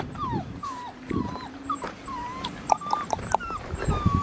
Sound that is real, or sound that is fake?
fake